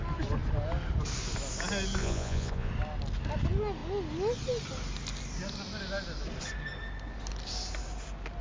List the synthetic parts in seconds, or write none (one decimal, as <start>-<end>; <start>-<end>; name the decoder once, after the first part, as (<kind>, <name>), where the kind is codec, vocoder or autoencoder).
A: 2.0-2.7 (vocoder, Vocos)